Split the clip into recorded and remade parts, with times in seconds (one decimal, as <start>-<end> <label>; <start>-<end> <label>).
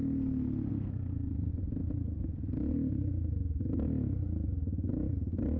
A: 0.0-0.7 recorded; 0.7-1.5 remade; 1.5-5.6 recorded